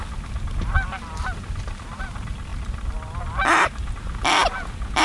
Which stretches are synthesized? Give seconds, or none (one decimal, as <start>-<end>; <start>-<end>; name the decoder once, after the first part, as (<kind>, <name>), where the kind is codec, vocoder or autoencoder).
none